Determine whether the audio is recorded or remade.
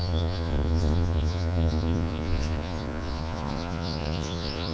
remade